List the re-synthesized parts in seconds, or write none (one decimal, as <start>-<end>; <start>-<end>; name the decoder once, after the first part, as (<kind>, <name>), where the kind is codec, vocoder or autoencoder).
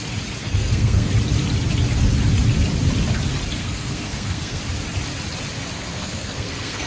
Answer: 0.4-1.1 (codec, SNAC); 3.6-4.6; 5.9-6.9